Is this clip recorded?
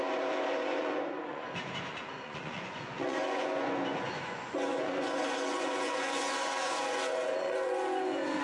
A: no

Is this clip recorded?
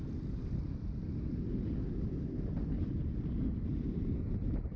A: yes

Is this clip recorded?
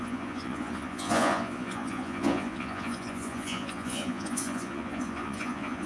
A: no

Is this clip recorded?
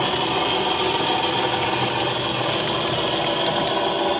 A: yes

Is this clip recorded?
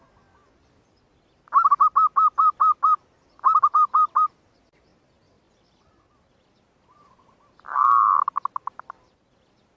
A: yes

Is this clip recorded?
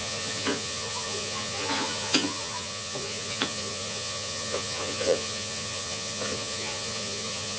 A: no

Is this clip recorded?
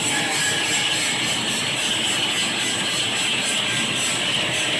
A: yes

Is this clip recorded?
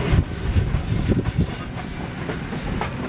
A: yes